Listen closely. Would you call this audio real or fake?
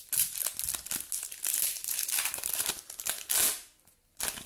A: real